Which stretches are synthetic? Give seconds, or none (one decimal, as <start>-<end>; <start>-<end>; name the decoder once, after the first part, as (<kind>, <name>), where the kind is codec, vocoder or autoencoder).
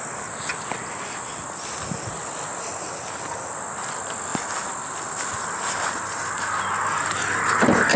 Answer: none